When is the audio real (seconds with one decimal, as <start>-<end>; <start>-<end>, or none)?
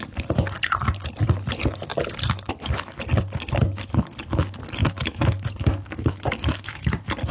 0.0-4.8; 6.8-7.3